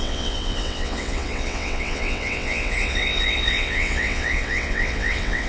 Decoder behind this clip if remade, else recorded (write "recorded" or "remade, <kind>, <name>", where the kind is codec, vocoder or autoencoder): remade, vocoder, WaveNeXt